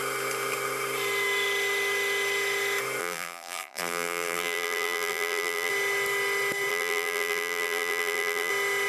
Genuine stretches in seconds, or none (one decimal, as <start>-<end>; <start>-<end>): 0.0-3.0; 5.7-6.7; 8.5-8.9